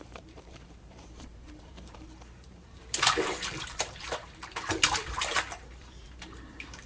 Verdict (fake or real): fake